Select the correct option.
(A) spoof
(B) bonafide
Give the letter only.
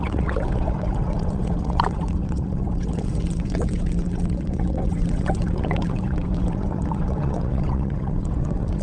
A